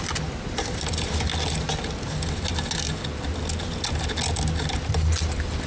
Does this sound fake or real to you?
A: real